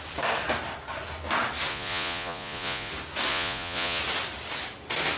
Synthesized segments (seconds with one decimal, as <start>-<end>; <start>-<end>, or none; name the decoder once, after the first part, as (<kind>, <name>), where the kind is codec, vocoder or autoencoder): 1.7-2.9 (vocoder, Vocos); 3.3-4.0